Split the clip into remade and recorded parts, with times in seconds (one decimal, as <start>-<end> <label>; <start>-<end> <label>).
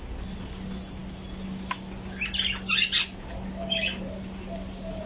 0.0-5.1 recorded